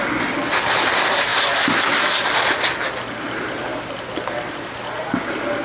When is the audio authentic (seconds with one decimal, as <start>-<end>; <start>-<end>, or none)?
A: 0.0-5.6